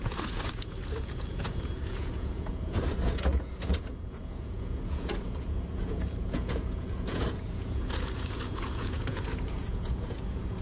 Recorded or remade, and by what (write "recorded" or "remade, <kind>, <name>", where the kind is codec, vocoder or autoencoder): remade, vocoder, Vocos